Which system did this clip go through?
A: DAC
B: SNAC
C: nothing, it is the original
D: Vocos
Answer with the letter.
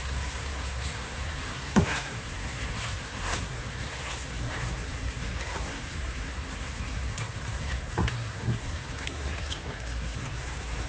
B